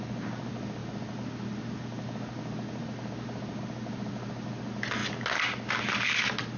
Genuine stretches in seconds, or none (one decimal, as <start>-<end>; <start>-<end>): 0.0-6.6